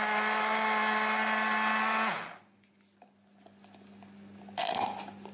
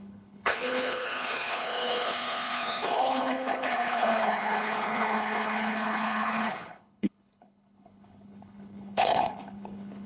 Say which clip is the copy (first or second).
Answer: second